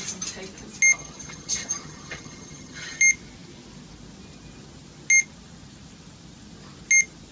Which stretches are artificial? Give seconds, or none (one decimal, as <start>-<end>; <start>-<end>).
1.0-3.0